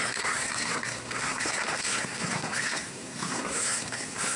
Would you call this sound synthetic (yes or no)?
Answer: yes